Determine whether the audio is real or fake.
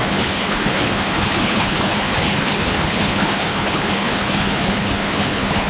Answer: fake